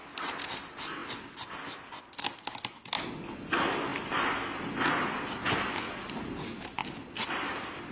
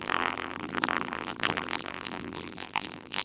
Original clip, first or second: first